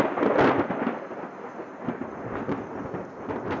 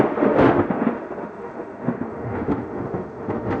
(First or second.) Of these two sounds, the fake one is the second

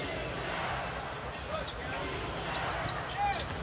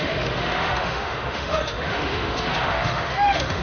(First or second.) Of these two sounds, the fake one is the second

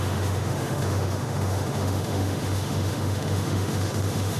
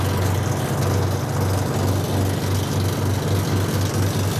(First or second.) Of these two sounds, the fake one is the first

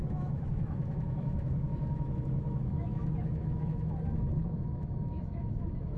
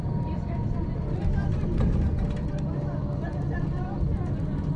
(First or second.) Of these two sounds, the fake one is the first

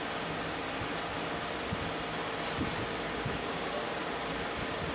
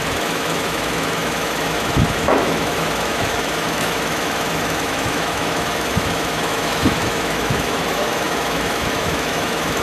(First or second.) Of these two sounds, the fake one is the second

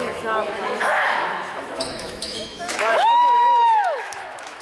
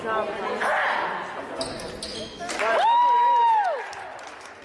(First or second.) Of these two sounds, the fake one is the first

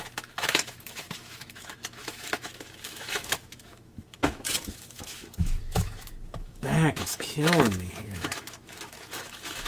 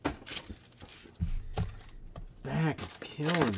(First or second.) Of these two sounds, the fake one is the first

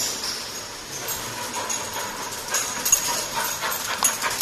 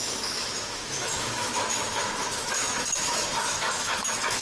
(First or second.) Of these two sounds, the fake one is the second